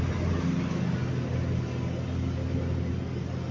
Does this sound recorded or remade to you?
recorded